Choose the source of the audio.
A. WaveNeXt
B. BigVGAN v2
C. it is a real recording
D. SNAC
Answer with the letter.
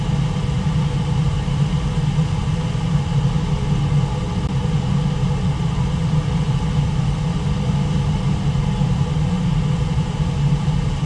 C